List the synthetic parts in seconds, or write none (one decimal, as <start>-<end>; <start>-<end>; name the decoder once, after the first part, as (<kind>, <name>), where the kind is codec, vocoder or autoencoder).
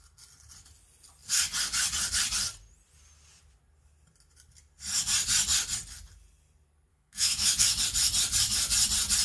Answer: 6.9-7.8 (autoencoder, DAC-VAE)